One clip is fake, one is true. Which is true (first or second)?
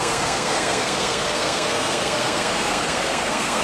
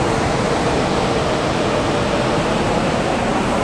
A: second